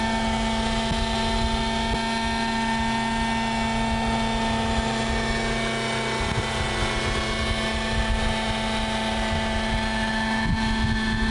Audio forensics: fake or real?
real